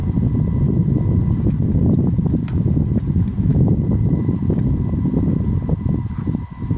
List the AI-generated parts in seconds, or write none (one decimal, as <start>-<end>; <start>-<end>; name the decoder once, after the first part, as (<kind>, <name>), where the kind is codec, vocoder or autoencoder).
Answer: none